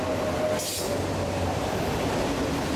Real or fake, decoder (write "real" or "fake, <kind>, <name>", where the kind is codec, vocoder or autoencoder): real